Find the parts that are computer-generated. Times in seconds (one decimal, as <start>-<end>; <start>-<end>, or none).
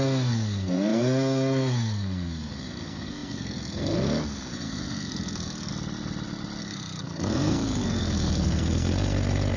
0.0-5.7; 6.6-9.6